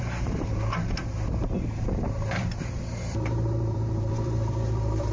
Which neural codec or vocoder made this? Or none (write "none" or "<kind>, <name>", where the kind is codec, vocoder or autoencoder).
vocoder, BigVGAN v2